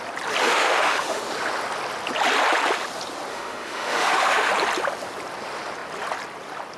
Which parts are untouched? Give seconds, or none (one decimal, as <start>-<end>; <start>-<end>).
0.0-0.4; 1.2-3.3; 4.5-6.8